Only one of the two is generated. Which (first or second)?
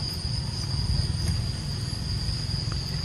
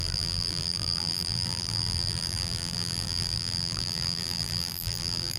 second